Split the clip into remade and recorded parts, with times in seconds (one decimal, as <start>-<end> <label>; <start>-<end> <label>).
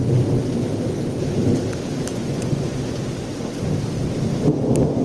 0.0-2.1 recorded; 2.1-3.0 remade; 3.0-5.0 recorded